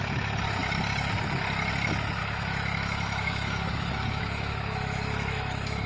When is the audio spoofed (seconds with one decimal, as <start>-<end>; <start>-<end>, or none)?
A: 2.2-5.9